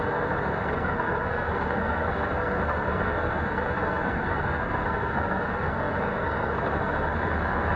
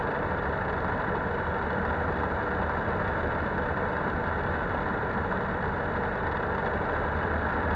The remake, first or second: first